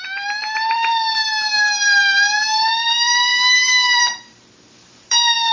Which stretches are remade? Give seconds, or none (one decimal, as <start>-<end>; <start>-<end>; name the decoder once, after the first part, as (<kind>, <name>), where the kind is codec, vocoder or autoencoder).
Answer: 0.0-5.5 (vocoder, BigVGAN v2)